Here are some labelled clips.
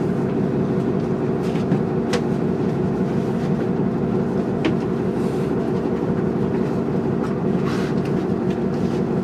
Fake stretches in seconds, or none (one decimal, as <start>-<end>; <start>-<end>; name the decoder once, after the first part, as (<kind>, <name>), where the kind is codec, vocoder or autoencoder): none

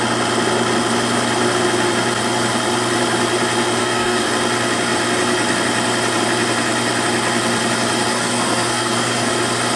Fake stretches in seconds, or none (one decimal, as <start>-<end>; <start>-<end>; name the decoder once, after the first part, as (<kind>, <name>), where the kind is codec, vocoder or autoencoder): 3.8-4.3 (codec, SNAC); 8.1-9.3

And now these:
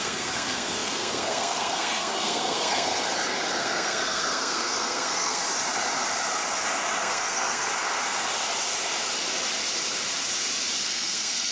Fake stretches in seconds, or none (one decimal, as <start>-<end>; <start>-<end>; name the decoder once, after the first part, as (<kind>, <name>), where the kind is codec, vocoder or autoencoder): 0.0-2.9 (codec, SNAC); 3.6-5.4; 7.0-7.7; 10.8-11.5

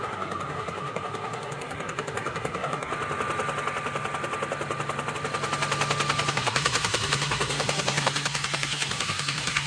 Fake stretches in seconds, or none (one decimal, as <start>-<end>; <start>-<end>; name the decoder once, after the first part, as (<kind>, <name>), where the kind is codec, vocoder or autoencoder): 0.0-2.9 (codec, SNAC); 6.3-9.7

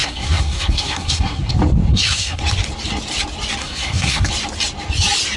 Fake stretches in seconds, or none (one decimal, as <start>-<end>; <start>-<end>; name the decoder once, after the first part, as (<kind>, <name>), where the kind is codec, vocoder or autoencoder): 0.0-1.5 (codec, SNAC); 1.9-2.4; 3.6-4.3

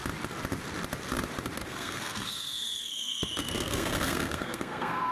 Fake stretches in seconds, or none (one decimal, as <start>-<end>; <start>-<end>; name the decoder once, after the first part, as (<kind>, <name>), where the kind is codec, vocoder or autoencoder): 1.6-5.1 (codec, SNAC)

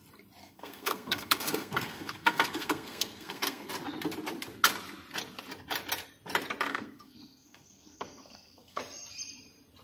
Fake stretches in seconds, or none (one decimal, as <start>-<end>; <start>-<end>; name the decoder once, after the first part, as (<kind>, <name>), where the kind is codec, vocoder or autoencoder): 0.4-3.7 (codec, SNAC); 6.7-8.8